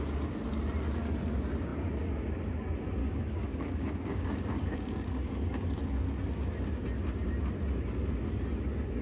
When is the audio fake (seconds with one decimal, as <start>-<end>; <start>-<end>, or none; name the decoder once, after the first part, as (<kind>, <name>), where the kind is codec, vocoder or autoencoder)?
3.0-5.3 (codec, DAC)